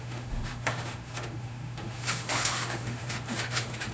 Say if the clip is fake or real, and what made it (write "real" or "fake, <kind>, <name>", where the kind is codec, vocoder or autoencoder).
fake, autoencoder, DAC-VAE